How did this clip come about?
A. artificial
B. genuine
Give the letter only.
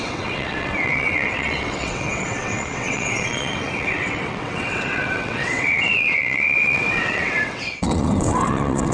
A